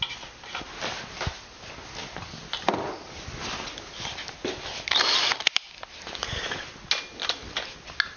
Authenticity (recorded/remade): recorded